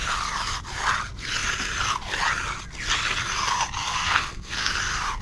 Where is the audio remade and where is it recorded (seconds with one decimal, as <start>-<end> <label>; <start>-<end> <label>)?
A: 0.0-3.9 recorded; 3.9-4.7 remade; 4.7-5.2 recorded